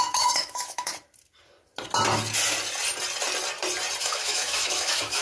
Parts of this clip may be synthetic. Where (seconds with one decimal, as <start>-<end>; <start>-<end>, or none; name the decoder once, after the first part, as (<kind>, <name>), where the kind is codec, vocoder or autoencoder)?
0.0-0.9 (autoencoder, DAC-VAE); 4.0-5.2